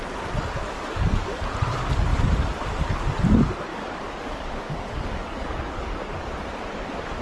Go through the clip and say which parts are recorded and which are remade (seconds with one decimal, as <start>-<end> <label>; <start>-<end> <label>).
0.0-0.6 recorded; 0.6-1.4 remade; 1.4-3.7 recorded; 3.7-6.3 remade; 6.3-7.2 recorded